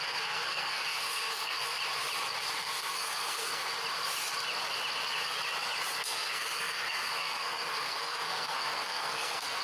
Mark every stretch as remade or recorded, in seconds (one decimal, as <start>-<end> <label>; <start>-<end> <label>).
0.0-1.8 remade; 1.8-2.6 recorded; 2.6-3.7 remade; 3.7-6.0 recorded; 6.0-9.6 remade